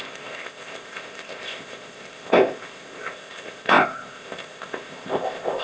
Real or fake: fake